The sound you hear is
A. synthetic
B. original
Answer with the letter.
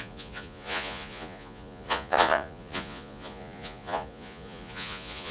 A